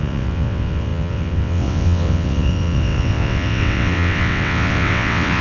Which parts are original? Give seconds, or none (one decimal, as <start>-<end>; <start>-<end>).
none